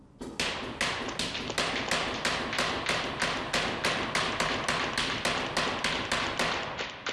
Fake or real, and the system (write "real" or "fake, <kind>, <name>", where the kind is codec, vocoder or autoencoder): real